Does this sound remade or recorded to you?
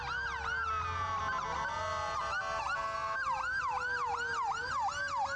recorded